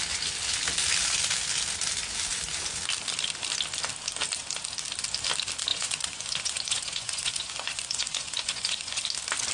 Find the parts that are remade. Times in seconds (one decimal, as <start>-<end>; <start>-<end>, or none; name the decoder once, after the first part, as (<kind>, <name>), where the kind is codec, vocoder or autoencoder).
5.7-9.0 (vocoder, Vocos)